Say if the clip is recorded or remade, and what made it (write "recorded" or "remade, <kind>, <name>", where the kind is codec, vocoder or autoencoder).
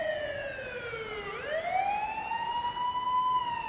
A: recorded